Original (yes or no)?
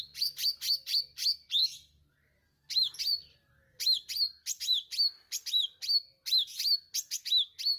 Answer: yes